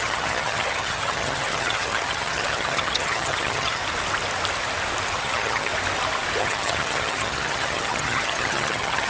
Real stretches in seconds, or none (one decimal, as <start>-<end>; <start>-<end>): 3.8-5.2; 5.7-6.4